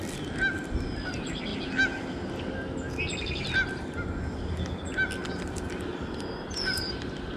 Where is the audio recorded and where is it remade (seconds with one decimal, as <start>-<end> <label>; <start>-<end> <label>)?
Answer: 0.0-5.9 recorded; 5.9-6.7 remade; 6.7-7.4 recorded